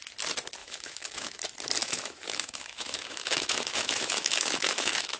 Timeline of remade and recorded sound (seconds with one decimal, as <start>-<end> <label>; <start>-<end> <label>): 0.0-0.6 recorded; 0.6-1.4 remade; 1.4-1.8 recorded; 1.8-5.2 remade